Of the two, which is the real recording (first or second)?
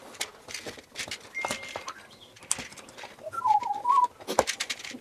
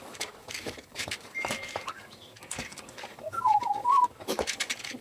first